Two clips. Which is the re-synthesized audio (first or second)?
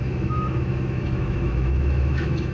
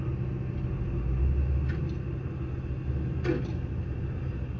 first